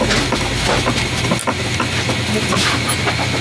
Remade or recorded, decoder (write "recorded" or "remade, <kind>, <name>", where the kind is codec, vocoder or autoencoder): recorded